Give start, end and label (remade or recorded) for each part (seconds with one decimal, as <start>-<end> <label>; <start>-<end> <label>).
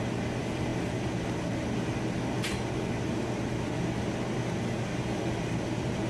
0.0-6.1 recorded